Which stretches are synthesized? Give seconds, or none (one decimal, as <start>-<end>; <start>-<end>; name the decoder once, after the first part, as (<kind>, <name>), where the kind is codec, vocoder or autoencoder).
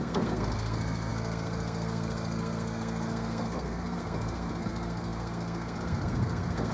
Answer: 0.0-6.7 (codec, SNAC)